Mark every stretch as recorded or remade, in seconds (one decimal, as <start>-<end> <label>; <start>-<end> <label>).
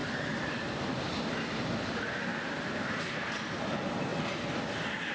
0.0-5.1 recorded